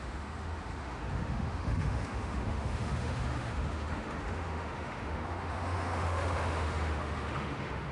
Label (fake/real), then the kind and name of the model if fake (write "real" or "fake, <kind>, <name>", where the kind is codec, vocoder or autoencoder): fake, autoencoder, DAC-VAE